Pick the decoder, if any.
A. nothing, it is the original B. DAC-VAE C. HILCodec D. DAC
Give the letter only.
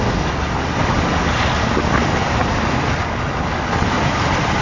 A